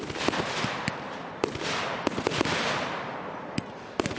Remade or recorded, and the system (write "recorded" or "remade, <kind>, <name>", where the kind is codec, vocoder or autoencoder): recorded